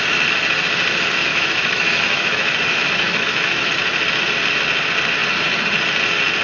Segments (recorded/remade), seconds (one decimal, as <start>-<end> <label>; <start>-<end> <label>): 0.0-1.3 recorded; 1.3-3.7 remade; 3.7-6.4 recorded

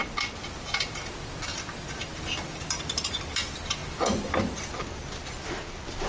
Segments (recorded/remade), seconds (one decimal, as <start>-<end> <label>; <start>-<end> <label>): 0.0-6.1 recorded

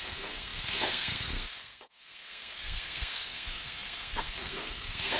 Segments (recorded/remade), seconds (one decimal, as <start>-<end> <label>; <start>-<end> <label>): 0.0-5.2 remade

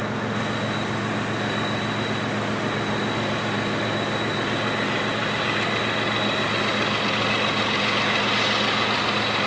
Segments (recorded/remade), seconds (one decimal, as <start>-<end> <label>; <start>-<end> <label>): 0.0-9.5 recorded

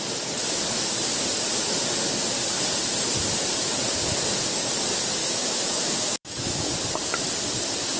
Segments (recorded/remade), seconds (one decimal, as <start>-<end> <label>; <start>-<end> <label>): 0.0-5.2 recorded; 5.2-6.7 remade; 6.7-8.0 recorded

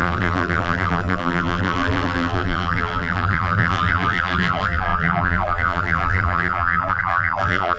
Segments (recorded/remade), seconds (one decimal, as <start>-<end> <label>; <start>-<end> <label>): 0.0-7.8 remade

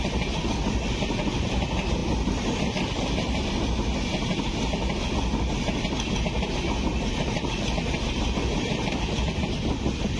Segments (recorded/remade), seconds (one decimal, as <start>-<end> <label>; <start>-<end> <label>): 0.0-10.2 recorded